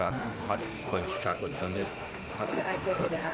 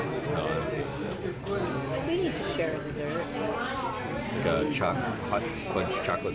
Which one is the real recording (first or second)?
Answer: second